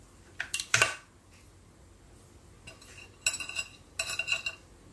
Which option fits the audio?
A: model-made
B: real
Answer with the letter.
B